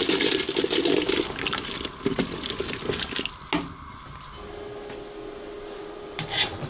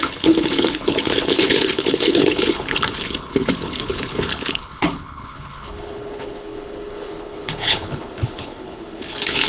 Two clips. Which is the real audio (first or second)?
first